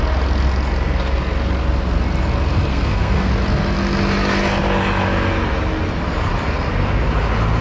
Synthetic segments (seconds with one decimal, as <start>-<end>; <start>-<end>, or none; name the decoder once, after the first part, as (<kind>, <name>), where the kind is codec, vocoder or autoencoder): 2.7-3.3 (codec, SNAC)